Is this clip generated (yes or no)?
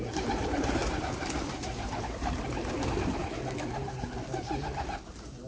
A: no